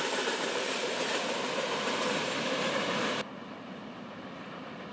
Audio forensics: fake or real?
fake